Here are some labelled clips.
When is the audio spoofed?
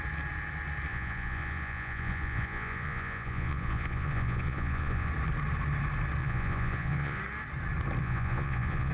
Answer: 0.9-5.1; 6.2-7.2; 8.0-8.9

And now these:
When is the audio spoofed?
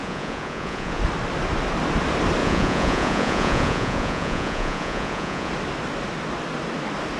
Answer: 0.0-1.0; 2.4-5.5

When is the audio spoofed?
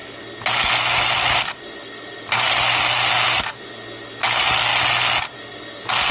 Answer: none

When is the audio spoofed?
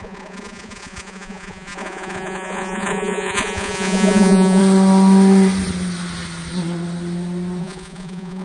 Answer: 0.0-4.6; 7.6-8.4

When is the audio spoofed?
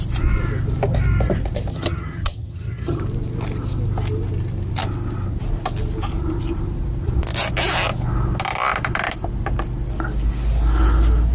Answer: 1.7-3.0